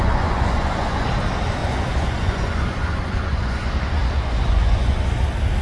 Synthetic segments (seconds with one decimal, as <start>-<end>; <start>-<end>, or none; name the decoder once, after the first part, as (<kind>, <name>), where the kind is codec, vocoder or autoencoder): 0.0-1.1 (vocoder, Vocos); 1.6-5.0